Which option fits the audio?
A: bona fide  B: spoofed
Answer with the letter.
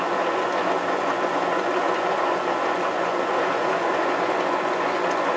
B